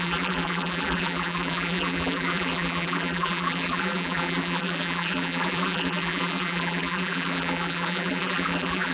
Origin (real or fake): fake